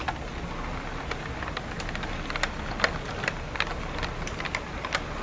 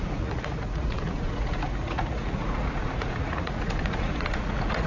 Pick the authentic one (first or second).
first